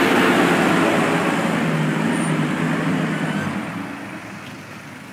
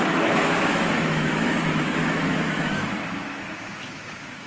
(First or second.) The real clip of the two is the first